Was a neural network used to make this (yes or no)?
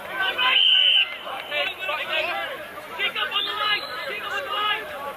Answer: yes